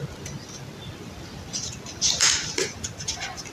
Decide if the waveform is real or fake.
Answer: real